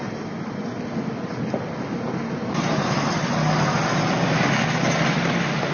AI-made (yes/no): no